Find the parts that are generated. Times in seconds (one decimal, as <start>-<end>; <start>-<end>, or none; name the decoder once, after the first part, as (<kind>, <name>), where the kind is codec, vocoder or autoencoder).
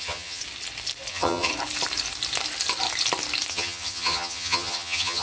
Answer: 0.0-0.4 (vocoder, HiFi-GAN); 1.1-1.5; 3.5-5.2